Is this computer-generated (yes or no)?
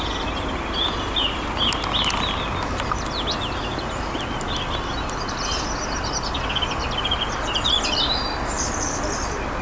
no